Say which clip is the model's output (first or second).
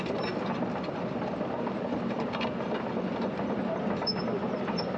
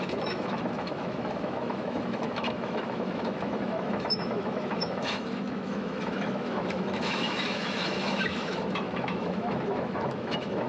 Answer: second